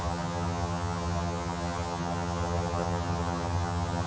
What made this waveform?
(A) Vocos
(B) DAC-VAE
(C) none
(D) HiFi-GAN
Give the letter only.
D